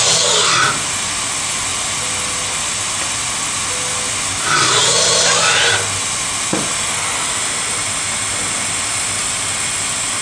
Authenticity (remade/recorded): recorded